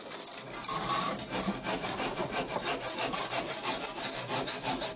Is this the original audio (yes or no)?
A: yes